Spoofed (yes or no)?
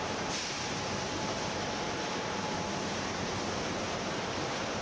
yes